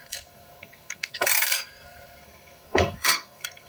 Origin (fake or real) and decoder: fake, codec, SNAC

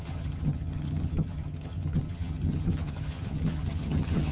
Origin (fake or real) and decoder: fake, vocoder, HiFi-GAN